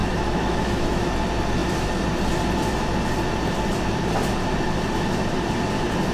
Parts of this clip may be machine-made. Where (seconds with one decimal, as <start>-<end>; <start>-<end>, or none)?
0.0-1.1